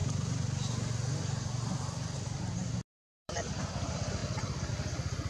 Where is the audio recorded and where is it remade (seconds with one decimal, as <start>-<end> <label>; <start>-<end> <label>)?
0.0-3.2 recorded; 3.2-5.3 remade